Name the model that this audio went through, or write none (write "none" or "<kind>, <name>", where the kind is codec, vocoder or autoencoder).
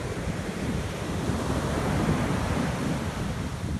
vocoder, BigVGAN v2